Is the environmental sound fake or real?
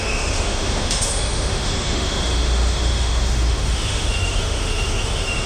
fake